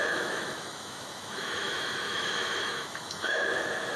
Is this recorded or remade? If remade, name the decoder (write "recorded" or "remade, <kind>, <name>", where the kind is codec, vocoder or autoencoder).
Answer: remade, autoencoder, DAC-VAE